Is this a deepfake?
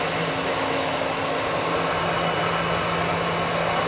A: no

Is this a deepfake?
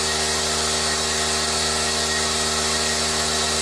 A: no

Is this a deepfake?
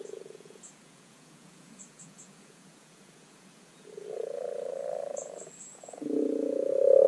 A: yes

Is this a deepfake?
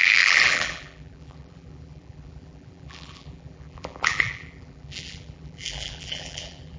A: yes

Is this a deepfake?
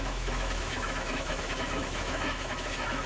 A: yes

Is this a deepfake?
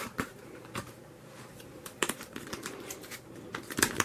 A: yes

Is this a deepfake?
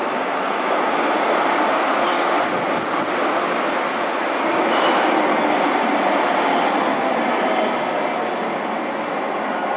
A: no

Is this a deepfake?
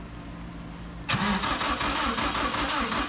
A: no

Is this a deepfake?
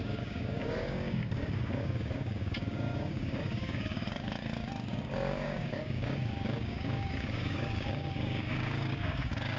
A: yes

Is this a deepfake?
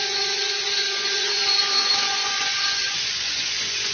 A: yes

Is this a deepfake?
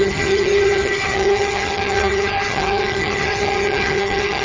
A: yes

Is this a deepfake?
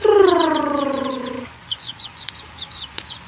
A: yes